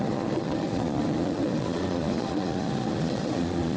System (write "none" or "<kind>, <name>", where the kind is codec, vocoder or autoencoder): vocoder, Vocos